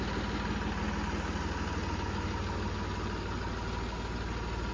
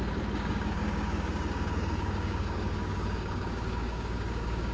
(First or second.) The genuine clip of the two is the first